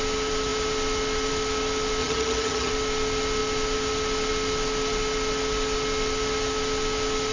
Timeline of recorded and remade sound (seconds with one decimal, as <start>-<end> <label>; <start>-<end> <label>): 0.0-2.0 recorded; 2.0-2.7 remade; 2.7-7.3 recorded

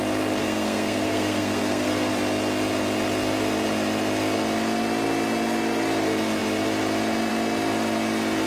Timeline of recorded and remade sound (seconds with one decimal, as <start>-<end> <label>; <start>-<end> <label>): 0.0-0.4 recorded; 0.4-2.1 remade; 2.1-8.5 recorded